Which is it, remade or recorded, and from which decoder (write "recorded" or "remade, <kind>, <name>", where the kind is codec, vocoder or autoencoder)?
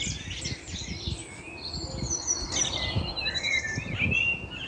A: recorded